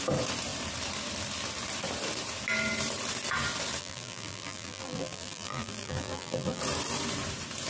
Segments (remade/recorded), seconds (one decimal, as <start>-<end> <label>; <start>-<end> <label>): 0.0-3.8 recorded; 3.8-6.6 remade; 6.6-7.7 recorded